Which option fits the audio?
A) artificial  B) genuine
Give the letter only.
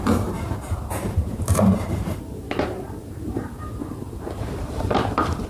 A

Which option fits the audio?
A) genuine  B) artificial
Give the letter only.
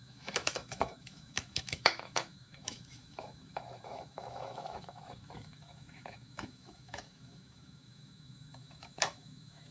B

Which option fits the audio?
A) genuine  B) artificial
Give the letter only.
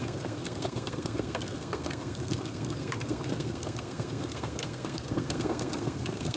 B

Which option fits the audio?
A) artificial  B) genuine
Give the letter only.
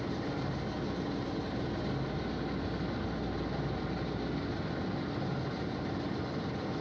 B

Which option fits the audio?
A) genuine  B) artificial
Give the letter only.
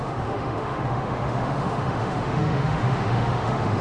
B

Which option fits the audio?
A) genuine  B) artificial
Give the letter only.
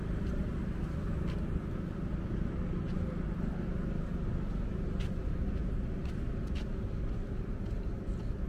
A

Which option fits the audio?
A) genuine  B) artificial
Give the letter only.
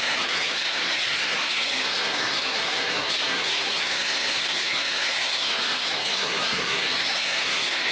B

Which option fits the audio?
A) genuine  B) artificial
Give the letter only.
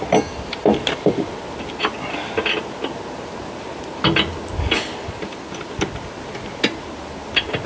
A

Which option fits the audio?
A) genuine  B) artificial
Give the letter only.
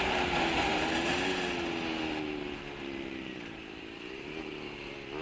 A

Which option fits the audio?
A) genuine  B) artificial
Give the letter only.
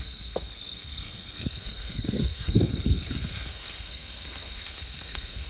B